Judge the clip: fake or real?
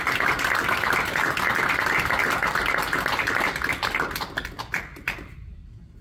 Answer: real